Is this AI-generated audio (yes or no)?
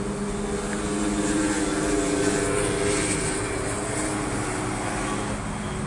no